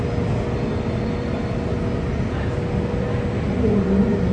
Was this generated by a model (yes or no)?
no